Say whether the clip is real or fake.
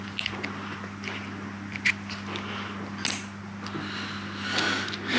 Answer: real